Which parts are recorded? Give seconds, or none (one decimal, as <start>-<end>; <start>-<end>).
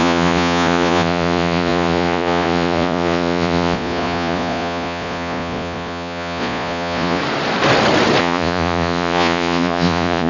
7.2-8.2